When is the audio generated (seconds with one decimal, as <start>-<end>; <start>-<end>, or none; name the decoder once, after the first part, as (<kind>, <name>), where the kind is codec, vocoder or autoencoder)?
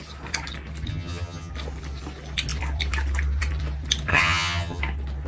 0.9-1.5 (vocoder, HiFi-GAN); 4.1-4.8